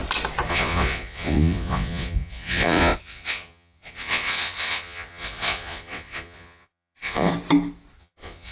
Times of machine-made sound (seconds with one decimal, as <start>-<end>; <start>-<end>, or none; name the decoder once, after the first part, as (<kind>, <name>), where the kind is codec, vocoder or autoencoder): 0.5-7.3 (vocoder, Vocos); 8.0-8.5